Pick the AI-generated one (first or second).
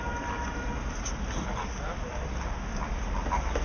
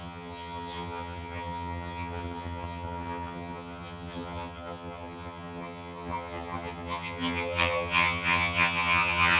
second